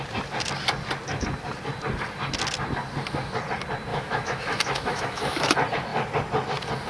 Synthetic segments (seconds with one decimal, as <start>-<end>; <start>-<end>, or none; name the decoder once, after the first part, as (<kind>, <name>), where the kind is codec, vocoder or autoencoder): 3.9-5.5 (autoencoder, DAC-VAE)